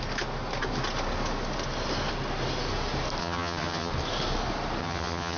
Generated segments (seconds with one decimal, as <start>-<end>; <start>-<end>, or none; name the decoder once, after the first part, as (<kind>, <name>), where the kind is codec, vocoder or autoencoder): 3.2-3.9 (vocoder, HiFi-GAN); 4.8-5.4